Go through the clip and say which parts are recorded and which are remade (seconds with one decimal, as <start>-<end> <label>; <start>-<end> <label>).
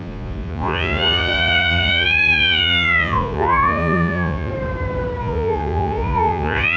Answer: 0.0-4.5 remade; 4.5-5.2 recorded; 5.2-6.8 remade